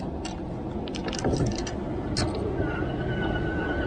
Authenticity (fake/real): real